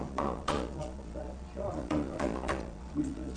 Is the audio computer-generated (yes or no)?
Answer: yes